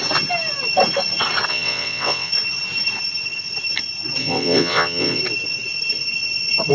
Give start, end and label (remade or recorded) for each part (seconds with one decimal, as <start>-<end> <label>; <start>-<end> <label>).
0.0-1.5 recorded; 1.5-2.3 remade; 2.3-4.2 recorded; 4.2-5.2 remade; 5.2-6.7 recorded